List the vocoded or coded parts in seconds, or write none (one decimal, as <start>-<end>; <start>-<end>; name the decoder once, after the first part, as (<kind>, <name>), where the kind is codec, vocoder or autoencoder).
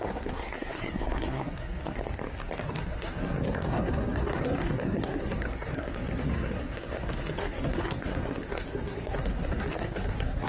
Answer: 0.0-2.0 (codec, SNAC); 2.7-10.5